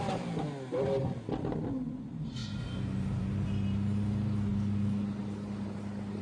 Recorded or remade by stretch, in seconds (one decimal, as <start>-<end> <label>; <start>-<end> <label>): 0.0-6.2 recorded